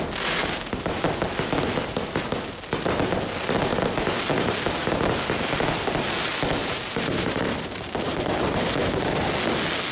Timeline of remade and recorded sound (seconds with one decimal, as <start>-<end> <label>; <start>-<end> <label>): 0.0-0.4 recorded; 0.4-1.0 remade; 1.0-6.6 recorded; 6.6-9.2 remade; 9.2-9.9 recorded